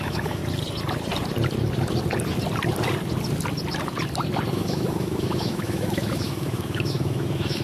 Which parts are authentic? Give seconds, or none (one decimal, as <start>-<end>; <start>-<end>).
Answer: 0.4-4.5